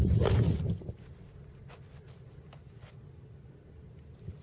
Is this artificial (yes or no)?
no